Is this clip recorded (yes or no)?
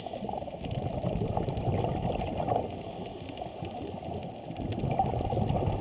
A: yes